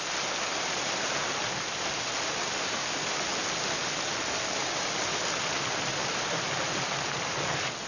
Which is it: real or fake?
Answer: real